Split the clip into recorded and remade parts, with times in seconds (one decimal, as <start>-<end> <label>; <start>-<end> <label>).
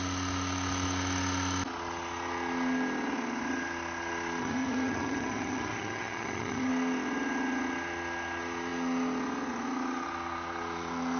0.0-4.4 recorded; 4.4-6.7 remade; 6.7-11.2 recorded